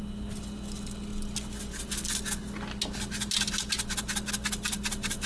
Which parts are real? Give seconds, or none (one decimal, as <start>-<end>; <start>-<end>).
0.0-5.3